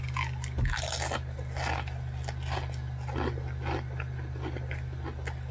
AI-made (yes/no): no